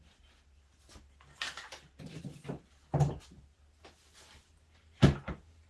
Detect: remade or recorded recorded